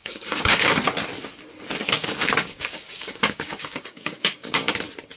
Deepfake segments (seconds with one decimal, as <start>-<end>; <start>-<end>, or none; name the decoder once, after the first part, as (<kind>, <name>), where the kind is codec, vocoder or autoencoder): 0.0-0.7 (codec, DAC); 2.0-4.7